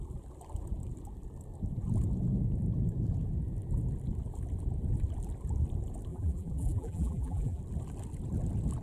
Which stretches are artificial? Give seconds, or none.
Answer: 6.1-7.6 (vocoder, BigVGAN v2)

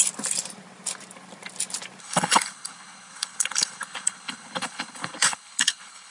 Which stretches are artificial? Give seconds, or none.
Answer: 2.0-6.1 (codec, HILCodec)

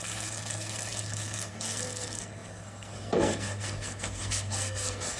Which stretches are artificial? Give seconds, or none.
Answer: 0.0-5.2 (codec, SNAC)

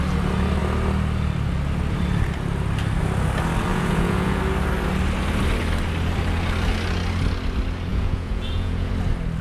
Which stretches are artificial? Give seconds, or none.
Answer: 3.7-4.4 (vocoder, Vocos); 7.9-8.9

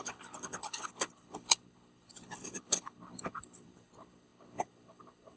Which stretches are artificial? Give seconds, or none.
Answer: 0.0-5.4 (codec, HILCodec)

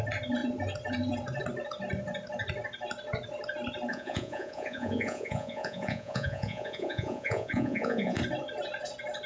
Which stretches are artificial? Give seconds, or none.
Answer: 3.9-8.2 (vocoder, Vocos)